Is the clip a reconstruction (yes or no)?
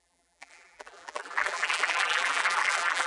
yes